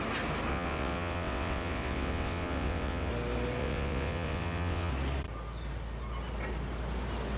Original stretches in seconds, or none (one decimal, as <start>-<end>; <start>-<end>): 0.0-0.5; 3.1-3.6; 4.9-7.4